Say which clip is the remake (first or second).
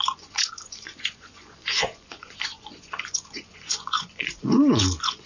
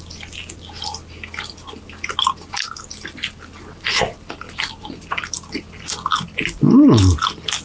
first